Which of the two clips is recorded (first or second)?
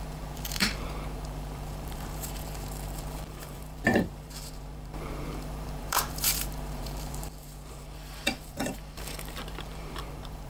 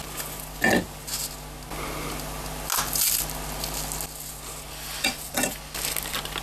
second